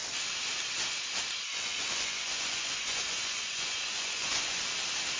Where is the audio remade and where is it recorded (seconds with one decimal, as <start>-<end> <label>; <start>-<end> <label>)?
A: 0.0-1.5 recorded; 1.5-4.6 remade; 4.6-5.2 recorded

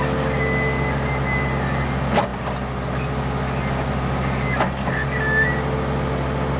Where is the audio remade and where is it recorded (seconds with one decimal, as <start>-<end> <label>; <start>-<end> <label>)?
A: 0.0-6.6 recorded

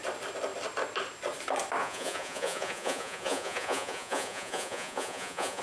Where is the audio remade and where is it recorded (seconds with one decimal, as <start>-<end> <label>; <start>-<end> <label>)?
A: 0.0-1.8 recorded; 1.8-5.6 remade

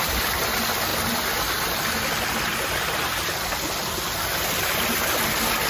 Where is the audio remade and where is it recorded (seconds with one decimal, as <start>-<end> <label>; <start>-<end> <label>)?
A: 0.0-5.7 recorded

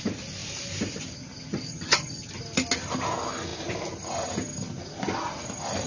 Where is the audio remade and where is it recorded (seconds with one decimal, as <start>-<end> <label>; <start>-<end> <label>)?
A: 0.0-1.5 recorded; 1.5-2.3 remade; 2.3-5.9 recorded

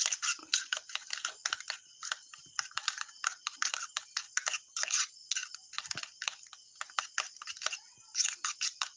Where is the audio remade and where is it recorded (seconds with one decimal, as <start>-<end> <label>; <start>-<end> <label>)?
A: 0.0-5.2 remade; 5.2-7.0 recorded; 7.0-9.0 remade

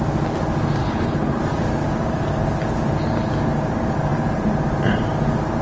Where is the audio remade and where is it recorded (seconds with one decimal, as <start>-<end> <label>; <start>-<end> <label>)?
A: 0.0-0.8 recorded; 0.8-1.4 remade; 1.4-5.6 recorded

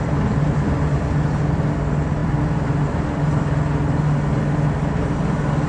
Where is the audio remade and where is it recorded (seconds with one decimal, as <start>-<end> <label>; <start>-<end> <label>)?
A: 0.0-5.7 recorded